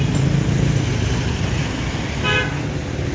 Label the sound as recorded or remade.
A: recorded